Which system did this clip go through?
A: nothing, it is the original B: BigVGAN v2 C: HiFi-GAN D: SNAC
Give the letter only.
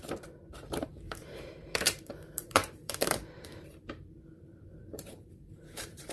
B